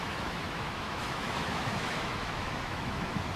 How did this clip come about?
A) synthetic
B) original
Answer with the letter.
A